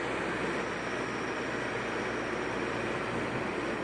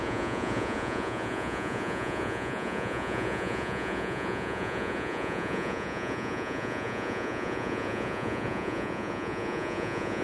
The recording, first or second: first